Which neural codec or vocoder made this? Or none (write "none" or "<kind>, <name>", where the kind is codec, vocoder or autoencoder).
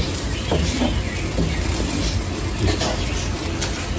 none